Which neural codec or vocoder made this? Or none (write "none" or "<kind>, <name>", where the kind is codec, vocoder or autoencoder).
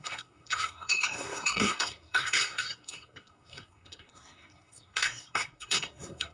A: codec, SNAC